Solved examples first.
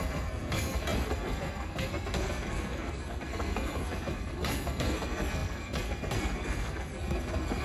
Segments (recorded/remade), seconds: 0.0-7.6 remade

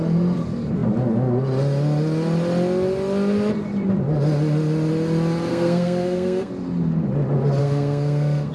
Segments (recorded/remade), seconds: 0.0-5.5 recorded; 5.5-6.5 remade; 6.5-7.6 recorded; 7.6-8.5 remade

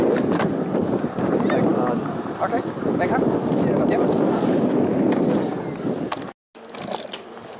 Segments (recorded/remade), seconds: 0.0-7.6 recorded

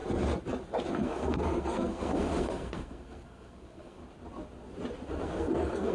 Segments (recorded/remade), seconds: 0.0-0.9 recorded; 0.9-4.0 remade; 4.0-5.1 recorded; 5.1-5.9 remade

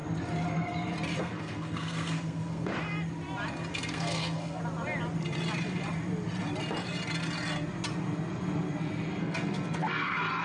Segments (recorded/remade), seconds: 0.0-1.2 recorded; 1.2-2.7 remade; 2.7-3.7 recorded; 3.7-4.6 remade; 4.6-9.2 recorded; 9.2-10.4 remade